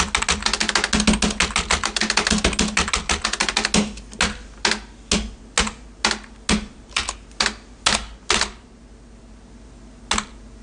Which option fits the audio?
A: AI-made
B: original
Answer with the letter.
B